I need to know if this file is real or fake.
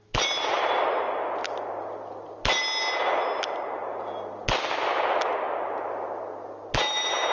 real